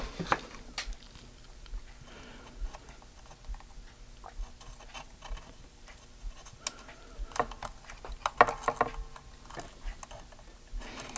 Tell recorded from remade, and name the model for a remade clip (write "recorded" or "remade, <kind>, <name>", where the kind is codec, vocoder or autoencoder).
recorded